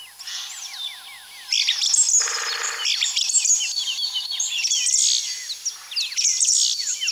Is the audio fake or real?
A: real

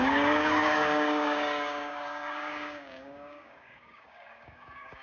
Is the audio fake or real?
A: fake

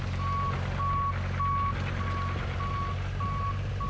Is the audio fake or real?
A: real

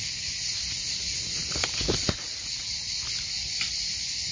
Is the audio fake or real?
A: real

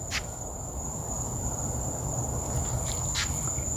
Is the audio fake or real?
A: real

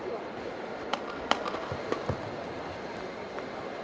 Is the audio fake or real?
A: real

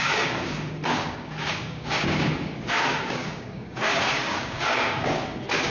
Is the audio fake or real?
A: fake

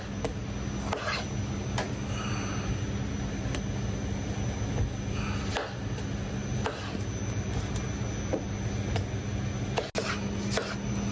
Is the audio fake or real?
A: real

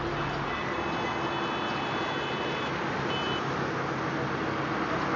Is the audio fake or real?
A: real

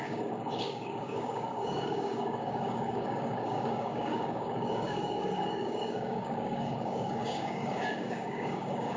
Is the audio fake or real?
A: fake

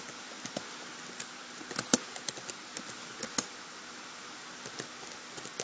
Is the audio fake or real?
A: real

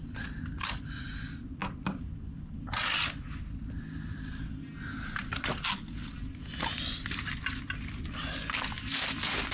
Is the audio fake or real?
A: real